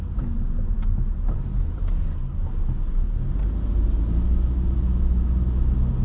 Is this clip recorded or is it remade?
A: recorded